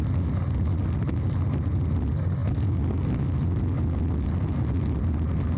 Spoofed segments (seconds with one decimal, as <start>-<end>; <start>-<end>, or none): none